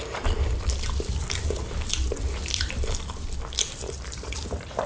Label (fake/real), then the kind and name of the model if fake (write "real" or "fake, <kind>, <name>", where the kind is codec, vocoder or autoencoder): fake, vocoder, BigVGAN v2